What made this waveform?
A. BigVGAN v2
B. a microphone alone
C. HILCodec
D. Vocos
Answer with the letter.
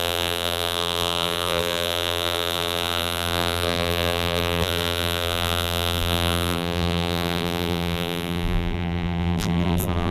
A